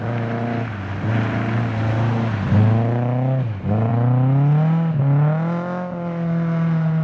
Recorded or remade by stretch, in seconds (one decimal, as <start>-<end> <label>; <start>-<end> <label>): 0.0-7.0 recorded